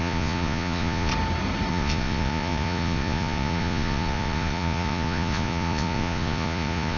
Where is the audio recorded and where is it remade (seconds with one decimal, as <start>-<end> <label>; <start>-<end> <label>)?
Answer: 0.0-1.1 remade; 1.1-1.7 recorded; 1.7-7.0 remade